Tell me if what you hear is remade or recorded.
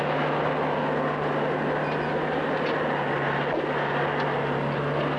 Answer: recorded